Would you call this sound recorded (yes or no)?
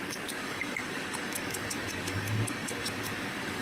no